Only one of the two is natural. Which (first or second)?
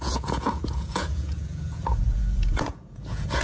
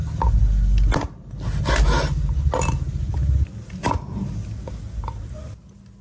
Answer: second